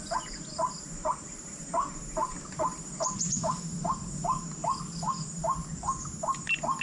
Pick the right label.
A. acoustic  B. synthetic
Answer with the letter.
A